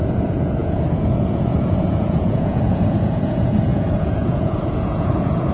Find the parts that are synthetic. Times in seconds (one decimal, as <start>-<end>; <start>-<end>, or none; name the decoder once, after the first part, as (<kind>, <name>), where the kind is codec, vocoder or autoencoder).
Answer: 0.0-5.5 (vocoder, Vocos)